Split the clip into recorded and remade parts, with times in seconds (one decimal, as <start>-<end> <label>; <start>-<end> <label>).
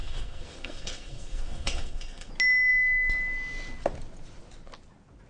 0.0-2.3 remade; 2.3-5.3 recorded